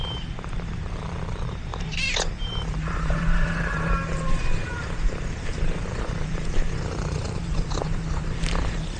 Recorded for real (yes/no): no